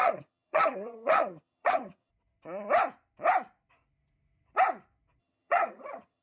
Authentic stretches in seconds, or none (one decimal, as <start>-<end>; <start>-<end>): 2.1-5.2